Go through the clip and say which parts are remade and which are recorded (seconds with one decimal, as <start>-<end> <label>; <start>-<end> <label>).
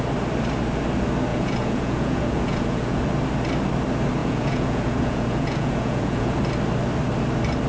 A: 0.0-1.3 recorded; 1.3-3.0 remade; 3.0-4.2 recorded; 4.2-6.4 remade; 6.4-7.7 recorded